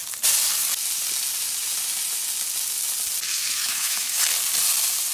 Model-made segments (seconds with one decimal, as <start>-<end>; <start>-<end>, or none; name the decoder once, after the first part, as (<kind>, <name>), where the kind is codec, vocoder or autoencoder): 3.3-4.2 (autoencoder, DAC-VAE)